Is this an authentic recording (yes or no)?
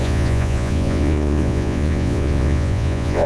no